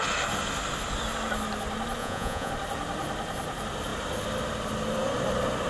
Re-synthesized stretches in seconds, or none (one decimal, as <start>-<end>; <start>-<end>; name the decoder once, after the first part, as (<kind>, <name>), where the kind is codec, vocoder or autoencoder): 2.0-2.5 (vocoder, Vocos)